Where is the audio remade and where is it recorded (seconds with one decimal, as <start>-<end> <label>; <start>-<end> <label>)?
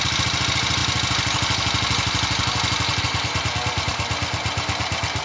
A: 0.0-5.2 recorded